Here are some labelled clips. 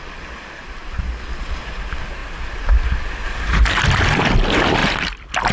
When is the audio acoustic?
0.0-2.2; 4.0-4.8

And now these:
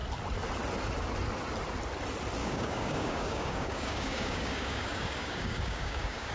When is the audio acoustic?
0.0-2.4

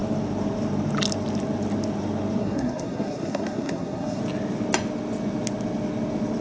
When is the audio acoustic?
0.0-2.4; 4.2-6.4

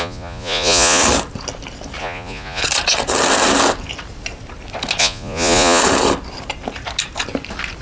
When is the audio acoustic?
1.0-2.0; 2.6-5.0; 5.8-7.8